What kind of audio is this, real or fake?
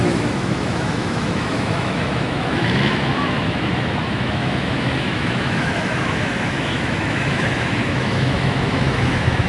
fake